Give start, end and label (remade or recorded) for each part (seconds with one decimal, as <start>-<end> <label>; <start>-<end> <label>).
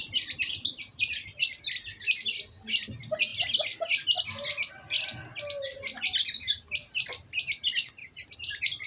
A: 0.0-0.9 recorded; 0.9-1.6 remade; 1.6-8.0 recorded; 8.0-8.9 remade